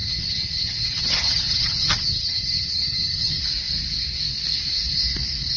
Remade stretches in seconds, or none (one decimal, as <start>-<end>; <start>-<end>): 0.0-3.4